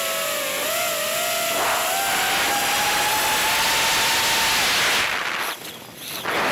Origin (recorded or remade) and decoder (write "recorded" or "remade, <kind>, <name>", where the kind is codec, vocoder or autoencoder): recorded